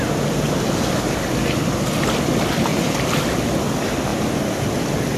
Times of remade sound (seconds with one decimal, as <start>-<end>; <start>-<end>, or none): 2.7-3.6; 4.1-4.7